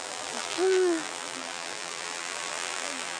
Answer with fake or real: fake